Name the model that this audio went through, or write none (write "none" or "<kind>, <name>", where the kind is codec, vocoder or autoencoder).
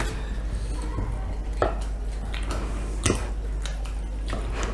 none